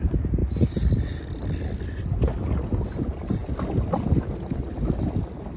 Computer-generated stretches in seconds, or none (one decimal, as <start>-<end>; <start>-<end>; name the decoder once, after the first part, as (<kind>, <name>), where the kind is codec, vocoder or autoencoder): none